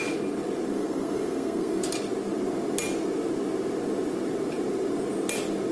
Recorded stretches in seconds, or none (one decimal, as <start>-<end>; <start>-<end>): 0.0-0.7; 1.9-5.7